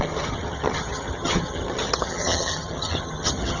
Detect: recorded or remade remade